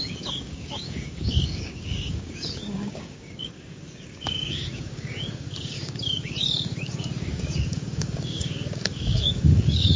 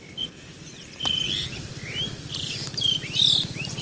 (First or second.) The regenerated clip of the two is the first